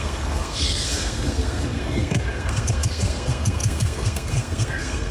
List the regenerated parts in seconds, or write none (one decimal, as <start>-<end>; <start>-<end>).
0.0-5.1